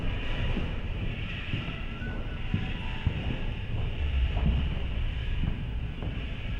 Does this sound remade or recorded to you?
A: remade